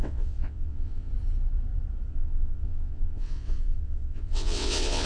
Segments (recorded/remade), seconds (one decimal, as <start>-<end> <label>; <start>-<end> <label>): 0.0-1.1 remade; 1.1-2.1 recorded; 2.1-5.1 remade